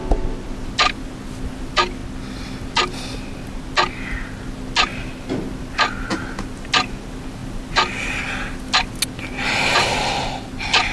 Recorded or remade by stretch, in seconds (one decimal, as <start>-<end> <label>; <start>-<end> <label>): 0.0-10.9 recorded